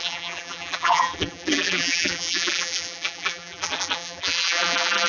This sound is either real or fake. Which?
fake